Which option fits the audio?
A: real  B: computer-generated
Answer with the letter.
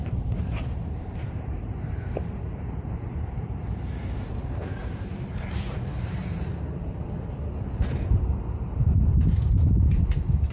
B